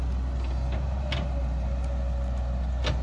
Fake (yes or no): no